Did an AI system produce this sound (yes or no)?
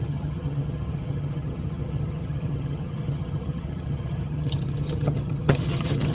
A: yes